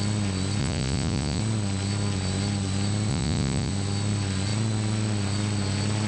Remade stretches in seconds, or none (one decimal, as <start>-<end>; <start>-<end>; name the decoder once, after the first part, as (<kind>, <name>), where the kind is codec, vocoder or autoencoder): 0.6-1.4 (vocoder, Vocos); 3.1-3.7